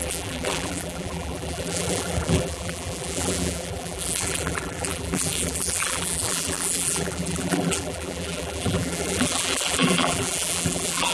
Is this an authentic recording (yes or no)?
no